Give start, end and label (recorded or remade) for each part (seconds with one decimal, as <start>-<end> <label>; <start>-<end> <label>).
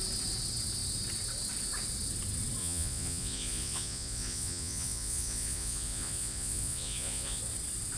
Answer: 0.0-2.6 recorded; 2.6-7.4 remade; 7.4-8.0 recorded